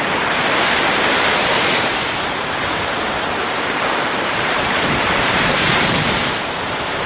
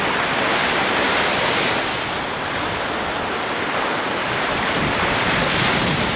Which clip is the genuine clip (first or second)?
second